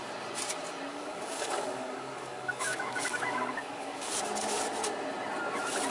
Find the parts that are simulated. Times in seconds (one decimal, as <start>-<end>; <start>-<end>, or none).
0.9-4.1